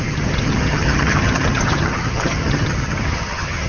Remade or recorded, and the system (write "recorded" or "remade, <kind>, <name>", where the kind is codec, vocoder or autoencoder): remade, vocoder, HiFi-GAN